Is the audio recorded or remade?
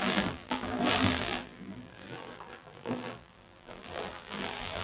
remade